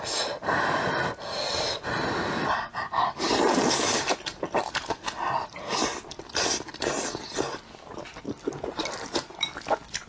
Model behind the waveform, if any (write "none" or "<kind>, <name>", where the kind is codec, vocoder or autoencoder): none